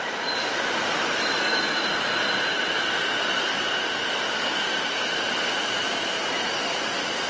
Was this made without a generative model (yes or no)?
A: yes